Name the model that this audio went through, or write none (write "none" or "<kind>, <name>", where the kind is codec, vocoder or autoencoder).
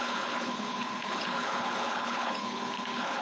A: codec, HILCodec